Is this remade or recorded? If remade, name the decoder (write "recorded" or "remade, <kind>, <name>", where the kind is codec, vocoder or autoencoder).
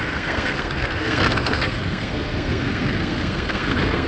remade, codec, SNAC